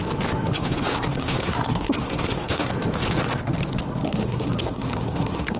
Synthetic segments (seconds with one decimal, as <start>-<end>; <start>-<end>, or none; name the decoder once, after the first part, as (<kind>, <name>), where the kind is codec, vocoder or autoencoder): 0.5-2.7 (codec, SNAC); 4.0-5.6